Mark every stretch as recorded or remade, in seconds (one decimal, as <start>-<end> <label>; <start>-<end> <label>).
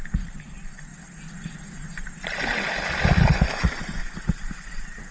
0.0-5.1 recorded